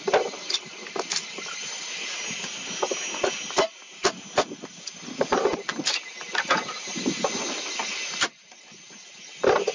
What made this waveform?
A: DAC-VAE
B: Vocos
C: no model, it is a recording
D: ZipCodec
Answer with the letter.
C